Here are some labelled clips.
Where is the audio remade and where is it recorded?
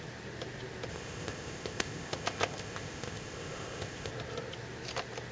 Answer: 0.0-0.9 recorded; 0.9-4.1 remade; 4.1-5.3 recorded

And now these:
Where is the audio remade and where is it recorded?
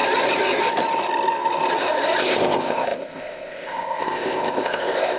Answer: 0.0-2.2 recorded; 2.2-5.2 remade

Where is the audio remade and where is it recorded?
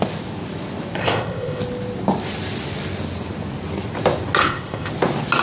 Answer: 0.0-1.0 recorded; 1.0-1.6 remade; 1.6-4.4 recorded; 4.4-4.9 remade; 4.9-5.4 recorded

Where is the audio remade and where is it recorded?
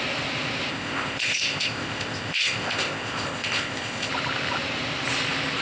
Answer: 0.0-0.7 recorded; 0.7-4.1 remade; 4.1-5.6 recorded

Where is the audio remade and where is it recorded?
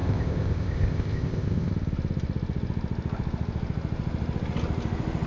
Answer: 0.0-1.7 remade; 1.7-5.3 recorded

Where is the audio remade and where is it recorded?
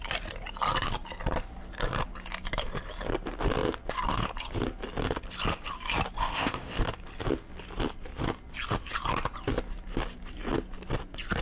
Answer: 0.0-6.2 recorded; 6.2-6.8 remade; 6.8-11.4 recorded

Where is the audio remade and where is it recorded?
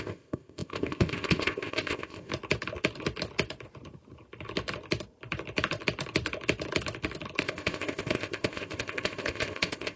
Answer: 0.0-2.3 remade; 2.3-7.4 recorded; 7.4-10.0 remade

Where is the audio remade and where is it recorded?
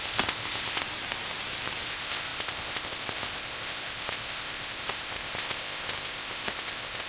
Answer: 0.0-0.8 remade; 0.8-1.9 recorded; 1.9-7.1 remade